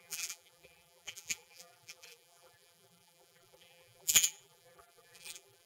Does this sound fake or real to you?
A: fake